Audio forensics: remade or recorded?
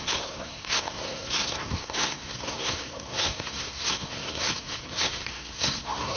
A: remade